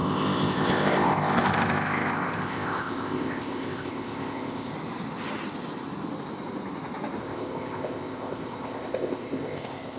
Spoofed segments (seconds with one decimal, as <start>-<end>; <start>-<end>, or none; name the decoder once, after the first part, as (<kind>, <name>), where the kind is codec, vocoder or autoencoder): 0.0-4.7 (codec, ZipCodec); 7.2-10.0